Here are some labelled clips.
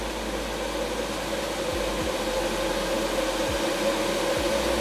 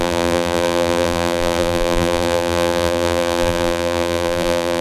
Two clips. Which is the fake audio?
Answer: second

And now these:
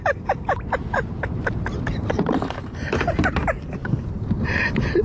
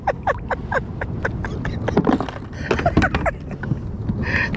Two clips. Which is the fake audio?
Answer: first